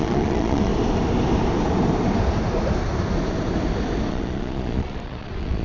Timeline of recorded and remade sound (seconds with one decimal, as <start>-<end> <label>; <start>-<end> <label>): 0.0-0.7 remade; 0.7-4.1 recorded; 4.1-5.6 remade